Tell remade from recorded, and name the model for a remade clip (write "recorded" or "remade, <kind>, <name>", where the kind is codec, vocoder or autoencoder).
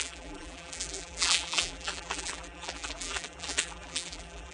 remade, vocoder, BigVGAN v2